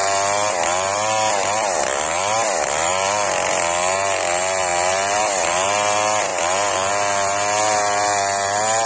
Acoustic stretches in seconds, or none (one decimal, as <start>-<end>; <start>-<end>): 6.3-6.9